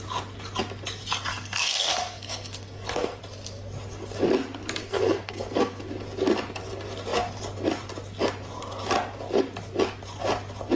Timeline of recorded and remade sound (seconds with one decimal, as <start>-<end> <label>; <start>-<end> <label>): 0.0-1.3 recorded; 1.3-3.2 remade; 3.2-4.8 recorded; 4.8-5.9 remade; 5.9-10.8 recorded